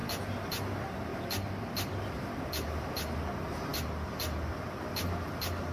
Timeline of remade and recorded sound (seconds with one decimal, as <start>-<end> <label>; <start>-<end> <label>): 0.0-5.7 recorded